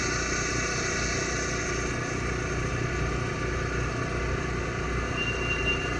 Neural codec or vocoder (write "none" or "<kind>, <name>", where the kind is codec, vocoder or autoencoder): none